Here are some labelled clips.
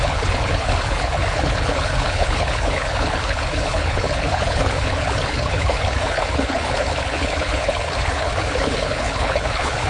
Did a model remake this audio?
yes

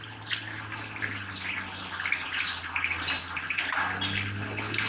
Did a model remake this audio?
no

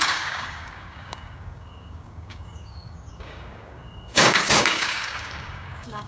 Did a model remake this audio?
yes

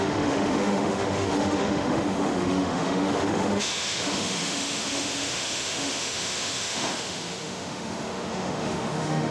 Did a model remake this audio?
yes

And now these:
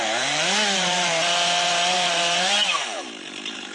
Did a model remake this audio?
yes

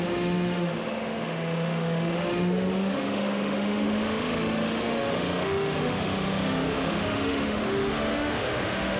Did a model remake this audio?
yes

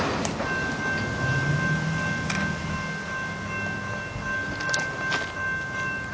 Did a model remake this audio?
no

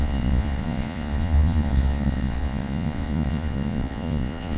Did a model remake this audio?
yes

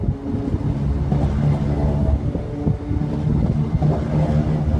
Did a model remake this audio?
no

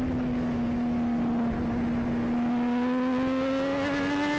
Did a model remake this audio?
no